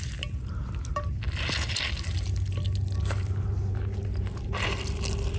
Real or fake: real